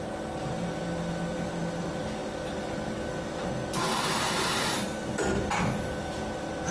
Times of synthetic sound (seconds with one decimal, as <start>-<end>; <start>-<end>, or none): none

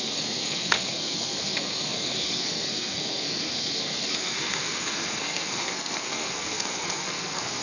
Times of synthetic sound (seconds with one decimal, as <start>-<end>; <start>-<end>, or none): 0.0-7.6

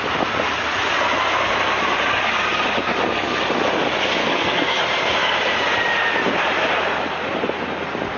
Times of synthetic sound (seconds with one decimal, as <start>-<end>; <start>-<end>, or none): 4.2-4.8

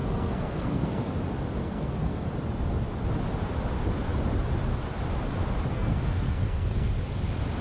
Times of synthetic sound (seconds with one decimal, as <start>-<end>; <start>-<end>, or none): 0.0-1.1; 1.6-2.2; 5.7-6.9